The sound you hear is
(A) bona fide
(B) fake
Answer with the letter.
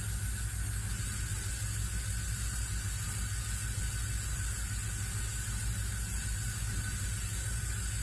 A